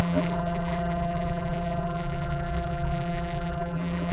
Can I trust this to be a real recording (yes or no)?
no